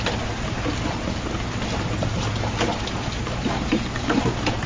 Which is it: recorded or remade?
recorded